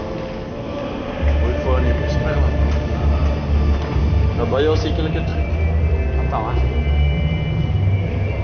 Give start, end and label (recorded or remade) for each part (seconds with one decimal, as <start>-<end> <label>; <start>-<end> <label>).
0.0-8.4 recorded